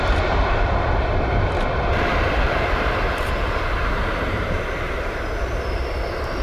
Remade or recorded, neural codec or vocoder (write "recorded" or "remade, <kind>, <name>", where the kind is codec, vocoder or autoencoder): remade, vocoder, BigVGAN v2